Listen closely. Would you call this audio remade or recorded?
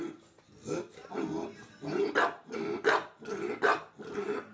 recorded